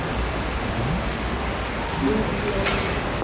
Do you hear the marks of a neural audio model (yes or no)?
no